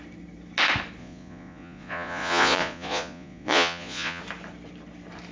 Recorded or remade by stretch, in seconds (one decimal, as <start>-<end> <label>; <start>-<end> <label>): 0.0-1.0 recorded; 1.0-4.2 remade; 4.2-5.3 recorded